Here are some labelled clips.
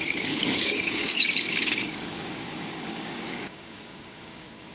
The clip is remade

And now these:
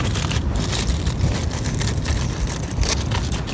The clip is recorded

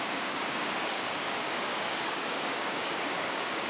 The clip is remade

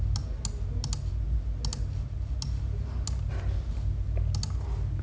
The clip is recorded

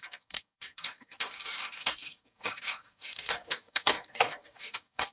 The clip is remade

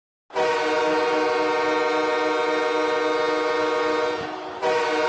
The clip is recorded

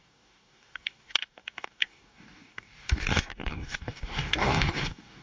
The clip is remade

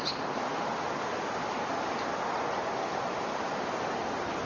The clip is recorded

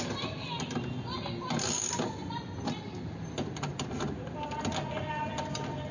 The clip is recorded